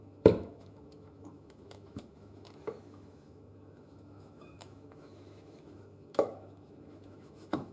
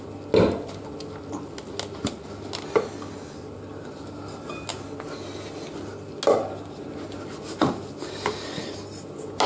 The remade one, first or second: first